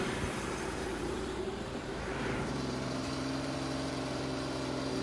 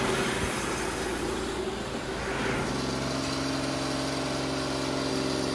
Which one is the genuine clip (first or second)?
second